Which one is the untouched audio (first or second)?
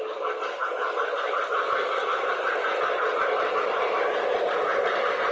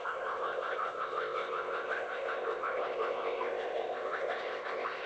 first